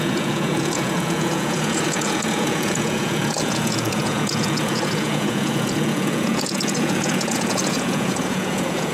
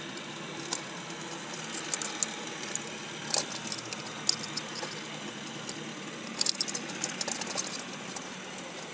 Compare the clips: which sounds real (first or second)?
second